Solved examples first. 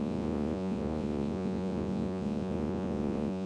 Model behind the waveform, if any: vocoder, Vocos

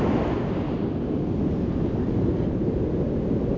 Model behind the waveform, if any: none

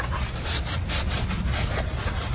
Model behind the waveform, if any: none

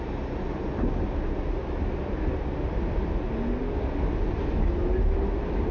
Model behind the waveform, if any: none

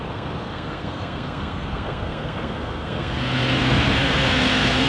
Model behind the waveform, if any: codec, SNAC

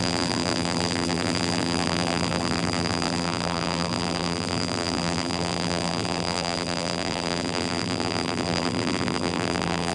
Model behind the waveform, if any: vocoder, BigVGAN v2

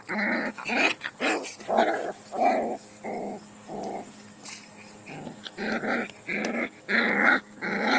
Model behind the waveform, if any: none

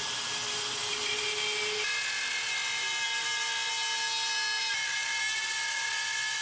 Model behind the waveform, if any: none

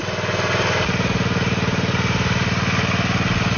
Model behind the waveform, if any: none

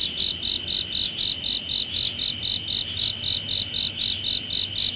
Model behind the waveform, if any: none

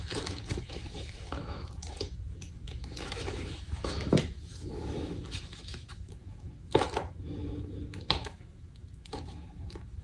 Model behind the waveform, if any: autoencoder, DAC-VAE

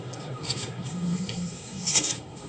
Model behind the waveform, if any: codec, SNAC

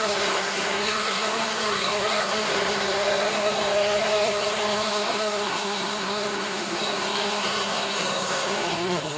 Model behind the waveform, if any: codec, SNAC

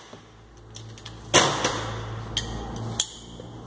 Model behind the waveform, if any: none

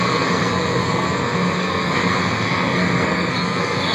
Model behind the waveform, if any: codec, SNAC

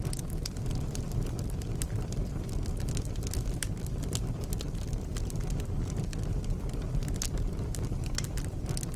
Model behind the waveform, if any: none